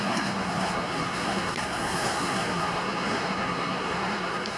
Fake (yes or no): yes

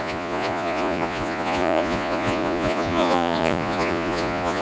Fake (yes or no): yes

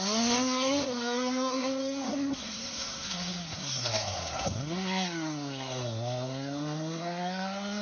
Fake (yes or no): yes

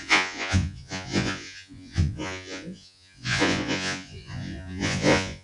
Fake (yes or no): yes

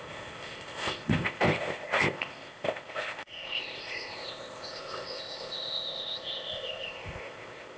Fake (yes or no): yes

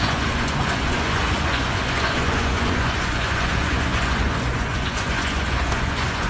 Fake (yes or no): yes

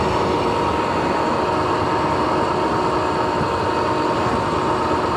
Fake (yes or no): no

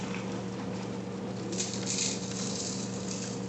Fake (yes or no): no